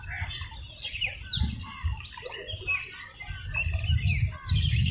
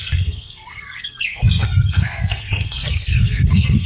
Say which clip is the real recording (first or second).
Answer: first